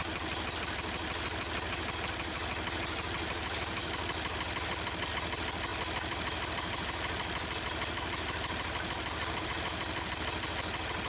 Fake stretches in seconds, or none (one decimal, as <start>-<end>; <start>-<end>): none